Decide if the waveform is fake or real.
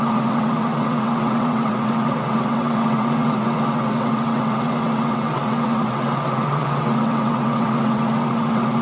fake